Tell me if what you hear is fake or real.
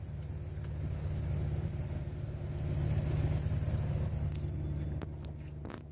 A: real